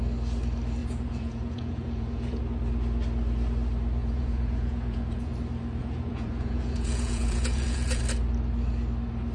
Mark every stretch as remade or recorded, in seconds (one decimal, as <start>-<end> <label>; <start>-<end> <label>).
0.0-0.8 recorded; 0.8-2.4 remade; 2.4-4.0 recorded; 4.0-5.3 remade; 5.3-5.8 recorded; 5.8-8.0 remade; 8.0-9.3 recorded